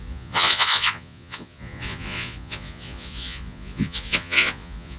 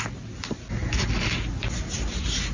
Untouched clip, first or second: second